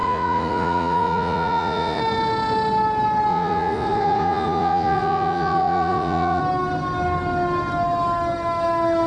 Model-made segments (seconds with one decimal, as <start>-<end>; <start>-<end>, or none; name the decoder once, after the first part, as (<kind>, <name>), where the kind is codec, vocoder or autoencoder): 0.0-2.0 (vocoder, Vocos); 3.3-6.4